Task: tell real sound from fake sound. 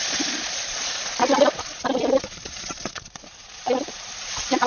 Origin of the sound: fake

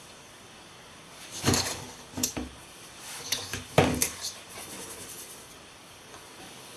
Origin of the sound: fake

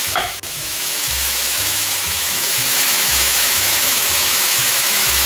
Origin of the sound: fake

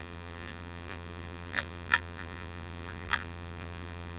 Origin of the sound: fake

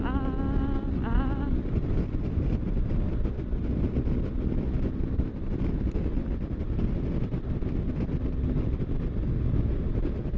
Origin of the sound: real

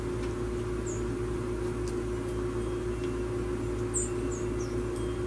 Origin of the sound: real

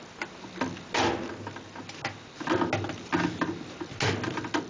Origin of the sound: real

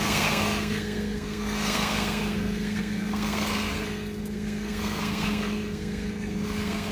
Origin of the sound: fake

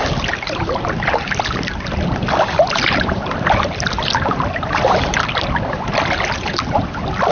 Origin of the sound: real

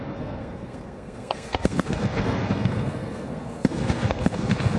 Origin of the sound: fake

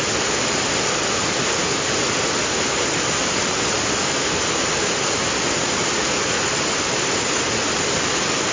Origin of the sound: real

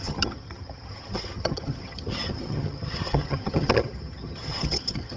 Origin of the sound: fake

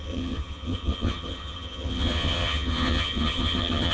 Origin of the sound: fake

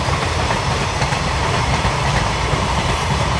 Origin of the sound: fake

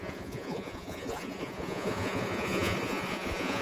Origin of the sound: fake